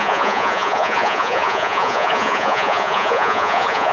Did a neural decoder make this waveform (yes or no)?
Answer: yes